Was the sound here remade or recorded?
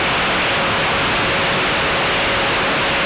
recorded